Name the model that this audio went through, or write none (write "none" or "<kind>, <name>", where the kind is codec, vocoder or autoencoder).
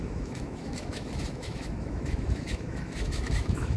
autoencoder, DAC-VAE